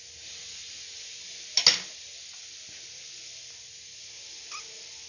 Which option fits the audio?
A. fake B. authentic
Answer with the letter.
B